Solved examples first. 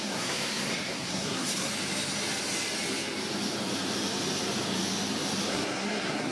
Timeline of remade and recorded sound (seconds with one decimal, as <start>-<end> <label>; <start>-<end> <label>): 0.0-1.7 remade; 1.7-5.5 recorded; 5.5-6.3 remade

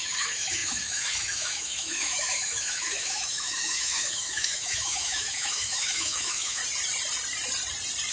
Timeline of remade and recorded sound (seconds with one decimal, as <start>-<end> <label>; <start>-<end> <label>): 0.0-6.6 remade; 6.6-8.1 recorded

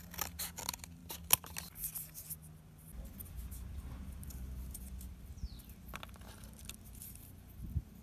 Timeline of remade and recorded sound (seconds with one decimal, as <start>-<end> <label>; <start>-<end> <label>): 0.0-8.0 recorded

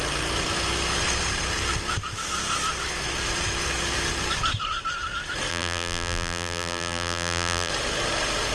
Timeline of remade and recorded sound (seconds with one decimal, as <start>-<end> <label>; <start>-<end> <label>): 0.0-5.5 recorded; 5.5-7.7 remade; 7.7-8.5 recorded